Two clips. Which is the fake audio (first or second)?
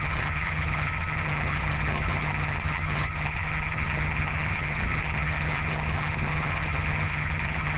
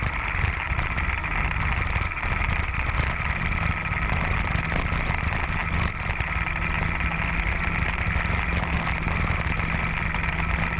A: first